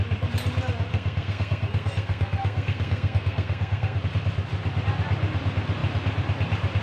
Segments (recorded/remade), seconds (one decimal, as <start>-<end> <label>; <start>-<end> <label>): 0.0-0.9 recorded; 0.9-4.0 remade; 4.0-6.8 recorded